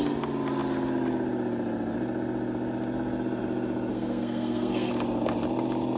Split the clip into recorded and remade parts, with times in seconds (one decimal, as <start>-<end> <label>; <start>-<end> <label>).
0.0-3.9 recorded; 3.9-4.9 remade; 4.9-6.0 recorded